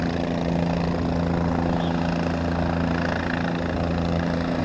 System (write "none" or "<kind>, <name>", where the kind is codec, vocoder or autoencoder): none